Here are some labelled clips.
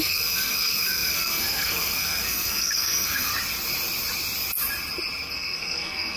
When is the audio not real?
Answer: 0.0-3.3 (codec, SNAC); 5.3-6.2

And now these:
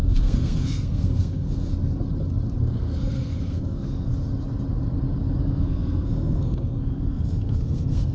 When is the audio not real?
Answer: 0.0-1.7 (codec, SNAC); 2.6-4.1; 5.4-8.1